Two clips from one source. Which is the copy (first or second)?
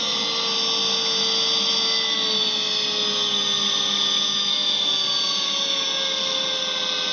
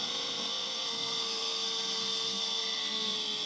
second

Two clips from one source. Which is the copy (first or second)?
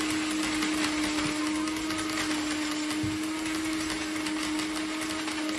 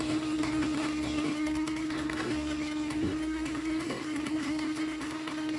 second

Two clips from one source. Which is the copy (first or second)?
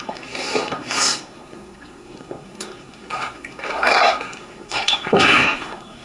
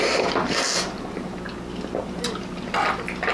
first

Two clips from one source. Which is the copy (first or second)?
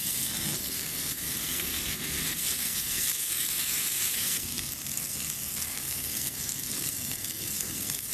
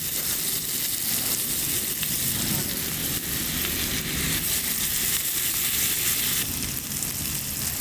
first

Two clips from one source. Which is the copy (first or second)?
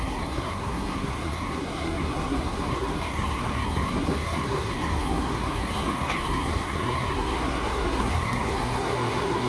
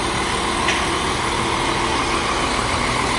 first